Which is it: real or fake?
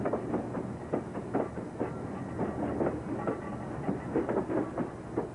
real